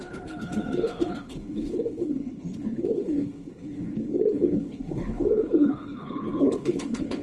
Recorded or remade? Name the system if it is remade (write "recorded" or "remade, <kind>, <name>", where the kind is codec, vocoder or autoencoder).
remade, codec, HILCodec